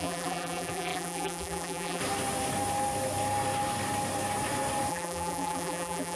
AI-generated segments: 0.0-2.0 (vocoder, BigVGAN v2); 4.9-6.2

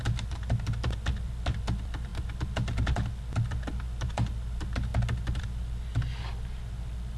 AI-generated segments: none

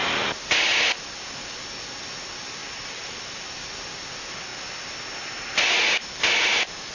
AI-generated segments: 2.6-3.5 (vocoder, BigVGAN v2)

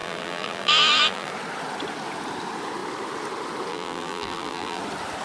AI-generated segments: 0.0-1.3 (vocoder, BigVGAN v2); 3.7-4.8

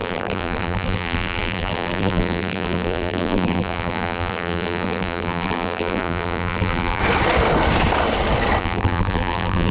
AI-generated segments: 0.0-7.0 (vocoder, BigVGAN v2); 8.6-9.7

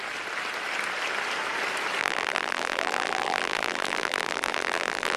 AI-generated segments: 2.0-5.2 (vocoder, BigVGAN v2)